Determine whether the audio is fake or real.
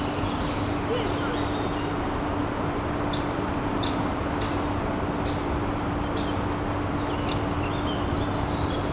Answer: real